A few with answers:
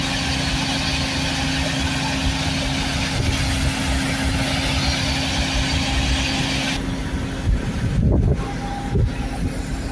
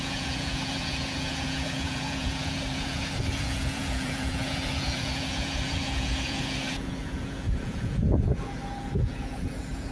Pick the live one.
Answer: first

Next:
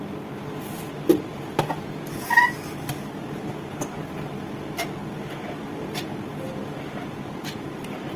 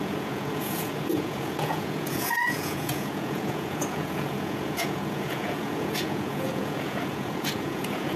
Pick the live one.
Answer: first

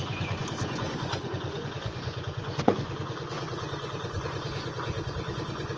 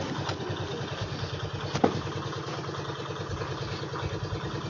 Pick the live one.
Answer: second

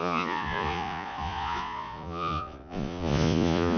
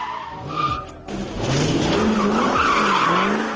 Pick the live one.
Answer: second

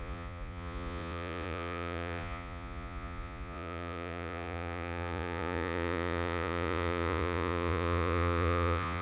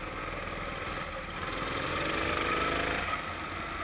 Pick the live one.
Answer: second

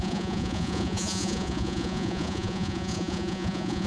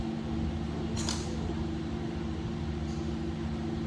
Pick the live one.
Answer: second